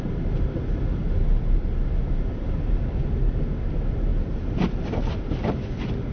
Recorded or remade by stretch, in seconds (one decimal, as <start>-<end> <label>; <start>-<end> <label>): 0.0-6.1 recorded